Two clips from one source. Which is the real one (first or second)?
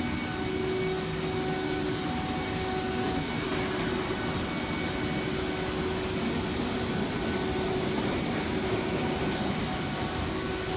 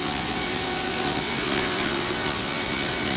first